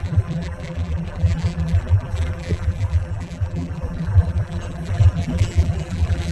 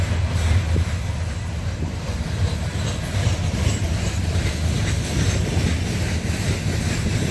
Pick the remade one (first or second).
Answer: first